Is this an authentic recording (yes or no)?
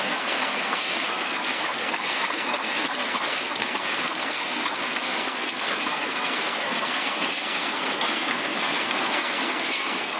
no